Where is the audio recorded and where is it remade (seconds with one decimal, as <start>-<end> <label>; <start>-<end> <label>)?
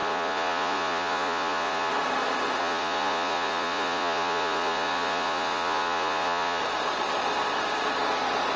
0.0-1.9 remade; 1.9-2.6 recorded; 2.6-6.6 remade; 6.6-8.6 recorded